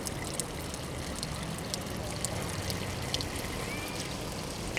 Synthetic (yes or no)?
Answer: no